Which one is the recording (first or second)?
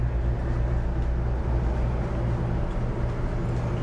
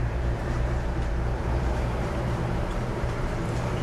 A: first